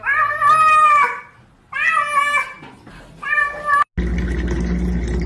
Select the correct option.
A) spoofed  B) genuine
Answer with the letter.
B